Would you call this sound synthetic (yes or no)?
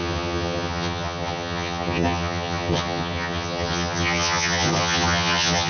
yes